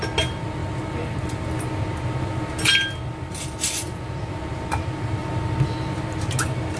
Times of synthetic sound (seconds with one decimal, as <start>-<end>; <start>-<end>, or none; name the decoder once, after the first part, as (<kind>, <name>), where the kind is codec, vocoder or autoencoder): none